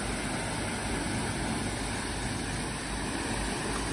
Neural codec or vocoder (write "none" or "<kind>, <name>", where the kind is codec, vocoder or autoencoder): none